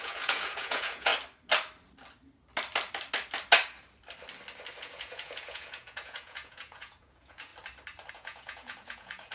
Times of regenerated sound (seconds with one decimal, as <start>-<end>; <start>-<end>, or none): 0.0-1.1; 4.8-7.5; 8.1-9.3